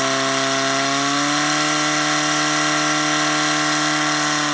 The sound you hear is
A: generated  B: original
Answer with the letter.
B